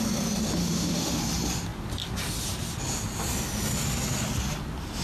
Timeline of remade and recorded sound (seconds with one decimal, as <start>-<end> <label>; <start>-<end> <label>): 0.0-0.6 recorded; 0.6-1.2 remade; 1.2-5.0 recorded